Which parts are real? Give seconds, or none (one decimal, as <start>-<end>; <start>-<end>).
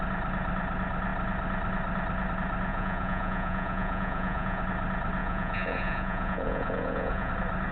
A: 0.0-2.7; 4.6-5.2; 7.3-7.7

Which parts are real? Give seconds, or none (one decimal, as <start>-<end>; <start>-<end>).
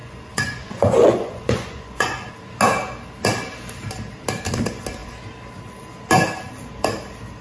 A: 2.3-7.4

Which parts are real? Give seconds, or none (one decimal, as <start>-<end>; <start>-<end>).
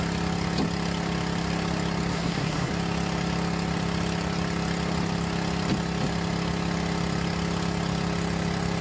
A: 0.0-2.1; 2.7-8.8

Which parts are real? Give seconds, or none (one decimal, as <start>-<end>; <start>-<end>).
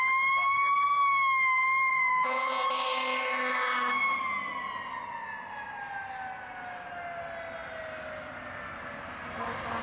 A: 0.0-1.9; 2.7-9.8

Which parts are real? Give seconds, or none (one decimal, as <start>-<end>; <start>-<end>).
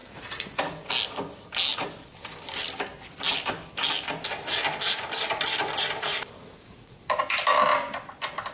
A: 0.9-6.4; 7.2-8.5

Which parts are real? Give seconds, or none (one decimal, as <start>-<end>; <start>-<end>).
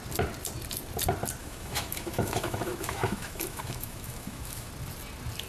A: 0.0-1.4; 4.7-5.5